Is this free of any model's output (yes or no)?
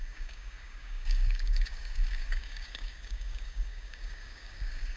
no